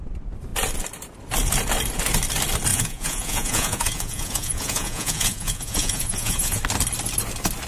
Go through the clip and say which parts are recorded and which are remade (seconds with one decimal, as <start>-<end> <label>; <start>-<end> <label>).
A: 0.0-2.7 recorded; 2.7-6.6 remade; 6.6-7.7 recorded

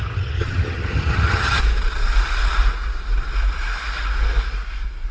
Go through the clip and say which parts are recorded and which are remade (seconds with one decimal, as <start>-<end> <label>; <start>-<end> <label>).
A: 0.0-1.6 remade; 1.6-5.1 recorded